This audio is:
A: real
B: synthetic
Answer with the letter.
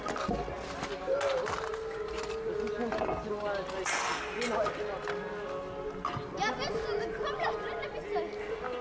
A